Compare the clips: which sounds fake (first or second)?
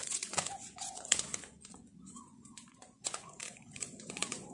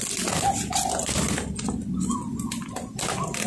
first